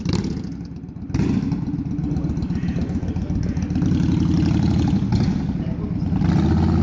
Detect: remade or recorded recorded